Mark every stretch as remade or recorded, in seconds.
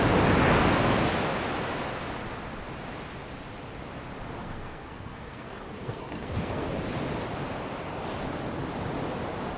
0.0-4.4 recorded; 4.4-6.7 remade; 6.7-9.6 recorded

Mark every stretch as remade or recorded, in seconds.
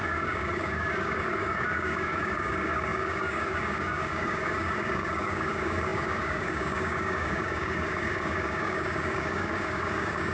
0.0-10.3 remade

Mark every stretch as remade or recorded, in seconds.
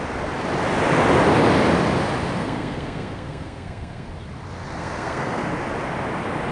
0.0-2.4 recorded; 2.4-4.1 remade; 4.1-4.8 recorded; 4.8-5.5 remade; 5.5-6.5 recorded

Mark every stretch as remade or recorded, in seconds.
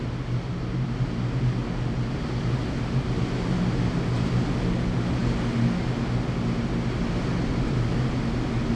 0.0-8.8 recorded